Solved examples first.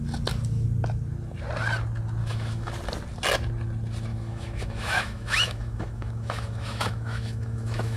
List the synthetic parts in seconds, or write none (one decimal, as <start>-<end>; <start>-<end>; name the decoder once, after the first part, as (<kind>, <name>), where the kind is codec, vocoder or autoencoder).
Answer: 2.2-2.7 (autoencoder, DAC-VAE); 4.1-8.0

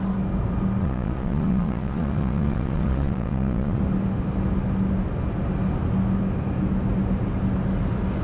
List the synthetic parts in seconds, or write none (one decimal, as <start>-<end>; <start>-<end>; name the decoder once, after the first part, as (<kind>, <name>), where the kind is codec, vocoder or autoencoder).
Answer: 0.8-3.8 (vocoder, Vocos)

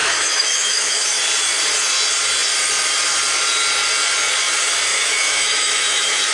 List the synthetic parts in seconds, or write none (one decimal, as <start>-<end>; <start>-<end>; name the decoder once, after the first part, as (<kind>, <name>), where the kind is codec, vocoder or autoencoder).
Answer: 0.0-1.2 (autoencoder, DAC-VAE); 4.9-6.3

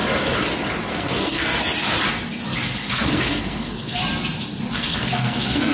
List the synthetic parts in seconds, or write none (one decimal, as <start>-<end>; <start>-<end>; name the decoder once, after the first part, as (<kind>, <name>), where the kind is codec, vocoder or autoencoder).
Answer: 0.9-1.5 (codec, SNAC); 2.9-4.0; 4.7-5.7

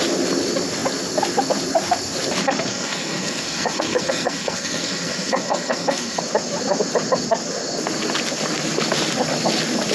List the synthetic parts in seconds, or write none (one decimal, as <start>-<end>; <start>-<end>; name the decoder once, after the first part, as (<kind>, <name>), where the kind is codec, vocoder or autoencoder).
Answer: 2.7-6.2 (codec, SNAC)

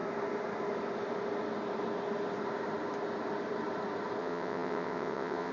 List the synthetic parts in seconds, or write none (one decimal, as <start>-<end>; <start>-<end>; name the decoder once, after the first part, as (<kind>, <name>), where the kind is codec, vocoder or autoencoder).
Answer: 4.2-5.5 (vocoder, WaveNeXt)

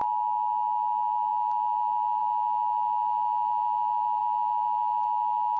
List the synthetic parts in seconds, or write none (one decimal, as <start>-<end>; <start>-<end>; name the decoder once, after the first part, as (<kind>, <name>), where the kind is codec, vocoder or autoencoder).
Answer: none